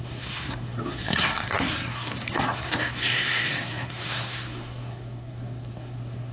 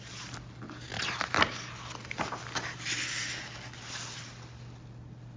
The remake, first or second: first